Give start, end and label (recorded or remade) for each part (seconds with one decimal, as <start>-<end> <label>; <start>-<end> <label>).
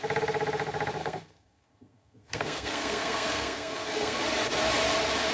0.0-1.0 recorded; 1.0-4.2 remade; 4.2-5.3 recorded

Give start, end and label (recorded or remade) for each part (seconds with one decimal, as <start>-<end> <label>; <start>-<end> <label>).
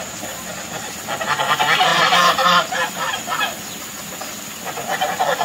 0.0-1.9 recorded; 1.9-2.7 remade; 2.7-5.4 recorded